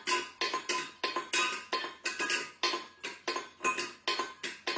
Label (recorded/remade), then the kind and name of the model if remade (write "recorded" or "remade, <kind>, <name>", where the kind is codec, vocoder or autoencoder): recorded